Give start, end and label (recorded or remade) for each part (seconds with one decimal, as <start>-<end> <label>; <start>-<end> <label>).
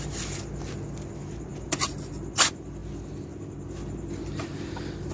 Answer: 0.0-5.1 recorded